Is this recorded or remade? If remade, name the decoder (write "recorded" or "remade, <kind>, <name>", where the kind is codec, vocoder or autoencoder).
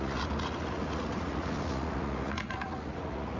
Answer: remade, vocoder, Vocos